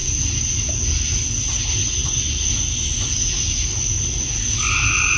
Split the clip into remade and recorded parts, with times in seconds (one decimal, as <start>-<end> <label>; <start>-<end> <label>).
0.0-5.2 recorded